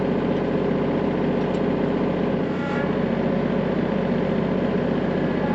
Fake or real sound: real